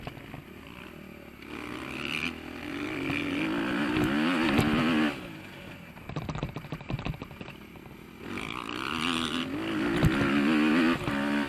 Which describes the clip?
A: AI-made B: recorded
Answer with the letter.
B